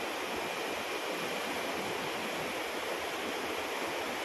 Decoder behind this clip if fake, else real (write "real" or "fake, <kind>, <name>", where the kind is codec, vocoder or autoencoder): real